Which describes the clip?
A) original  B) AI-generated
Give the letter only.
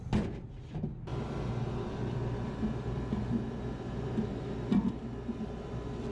A